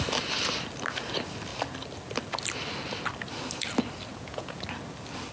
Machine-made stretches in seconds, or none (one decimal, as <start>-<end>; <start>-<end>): 4.1-4.6